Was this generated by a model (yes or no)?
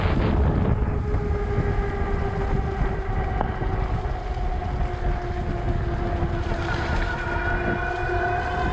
no